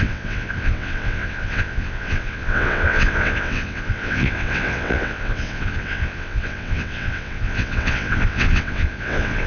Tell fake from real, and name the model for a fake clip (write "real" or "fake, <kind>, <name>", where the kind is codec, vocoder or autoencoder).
fake, vocoder, WaveNeXt